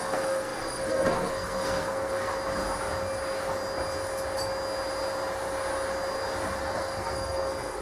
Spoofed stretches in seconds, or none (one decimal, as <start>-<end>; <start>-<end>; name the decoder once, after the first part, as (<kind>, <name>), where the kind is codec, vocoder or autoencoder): 0.0-2.3 (codec, SNAC); 6.6-7.8